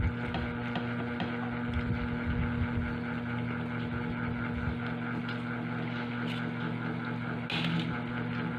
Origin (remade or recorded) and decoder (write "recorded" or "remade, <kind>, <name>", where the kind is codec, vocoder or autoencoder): recorded